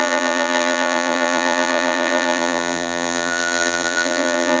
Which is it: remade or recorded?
remade